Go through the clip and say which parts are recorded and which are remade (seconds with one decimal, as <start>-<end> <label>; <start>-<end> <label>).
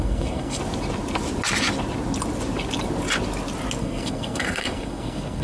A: 0.0-0.6 remade; 0.6-3.8 recorded; 3.8-5.4 remade